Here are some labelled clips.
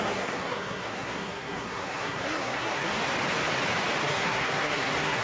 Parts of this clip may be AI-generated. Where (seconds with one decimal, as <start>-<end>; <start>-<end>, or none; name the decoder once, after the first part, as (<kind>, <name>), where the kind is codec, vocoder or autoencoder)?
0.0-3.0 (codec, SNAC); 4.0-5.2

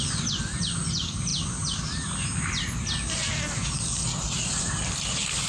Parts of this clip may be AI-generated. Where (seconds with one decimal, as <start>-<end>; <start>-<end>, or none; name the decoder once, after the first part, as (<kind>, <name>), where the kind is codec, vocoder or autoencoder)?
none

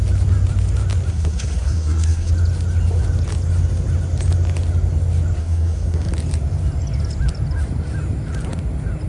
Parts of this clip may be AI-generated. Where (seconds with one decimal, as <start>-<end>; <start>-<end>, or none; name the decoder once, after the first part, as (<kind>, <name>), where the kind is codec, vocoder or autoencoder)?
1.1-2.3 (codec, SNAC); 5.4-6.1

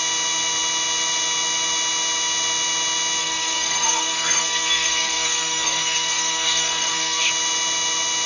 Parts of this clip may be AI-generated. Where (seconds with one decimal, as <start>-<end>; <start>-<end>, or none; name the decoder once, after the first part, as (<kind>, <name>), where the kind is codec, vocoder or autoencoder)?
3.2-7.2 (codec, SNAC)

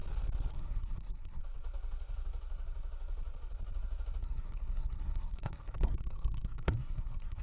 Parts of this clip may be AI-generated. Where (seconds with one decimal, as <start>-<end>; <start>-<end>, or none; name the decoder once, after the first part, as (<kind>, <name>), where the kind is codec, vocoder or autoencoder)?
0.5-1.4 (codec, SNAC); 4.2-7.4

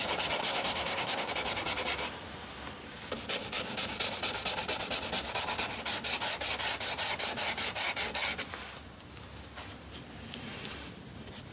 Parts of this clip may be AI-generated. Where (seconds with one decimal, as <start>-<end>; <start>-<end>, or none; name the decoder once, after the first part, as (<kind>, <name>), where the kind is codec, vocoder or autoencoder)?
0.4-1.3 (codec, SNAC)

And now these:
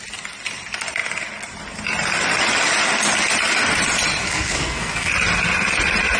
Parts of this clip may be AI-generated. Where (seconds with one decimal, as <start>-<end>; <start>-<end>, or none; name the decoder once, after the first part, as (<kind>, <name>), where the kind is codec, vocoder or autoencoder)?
4.2-5.1 (codec, SNAC)